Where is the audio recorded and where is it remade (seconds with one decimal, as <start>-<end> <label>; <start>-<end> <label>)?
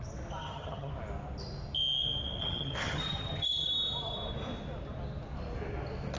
0.0-0.4 recorded; 0.4-0.9 remade; 0.9-2.4 recorded; 2.4-3.7 remade; 3.7-6.2 recorded